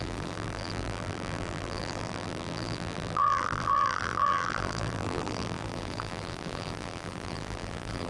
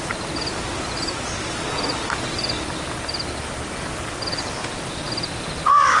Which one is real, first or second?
second